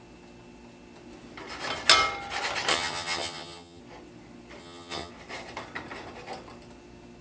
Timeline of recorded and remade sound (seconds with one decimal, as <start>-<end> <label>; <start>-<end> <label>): 0.0-2.7 recorded; 2.7-3.8 remade; 3.8-4.6 recorded; 4.6-5.1 remade; 5.1-7.2 recorded